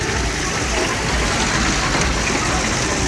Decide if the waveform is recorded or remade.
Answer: recorded